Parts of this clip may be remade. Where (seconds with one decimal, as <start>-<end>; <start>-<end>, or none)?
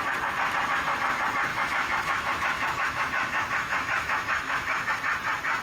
1.5-4.9